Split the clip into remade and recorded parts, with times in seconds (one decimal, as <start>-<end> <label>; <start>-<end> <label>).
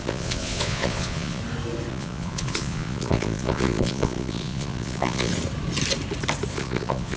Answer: 0.0-1.4 remade; 1.4-1.9 recorded; 1.9-5.3 remade; 5.3-6.5 recorded; 6.5-7.2 remade